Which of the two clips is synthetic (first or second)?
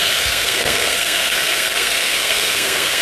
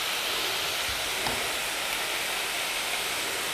first